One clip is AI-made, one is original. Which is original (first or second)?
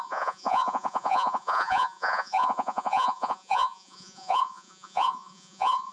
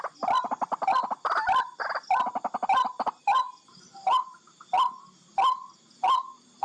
second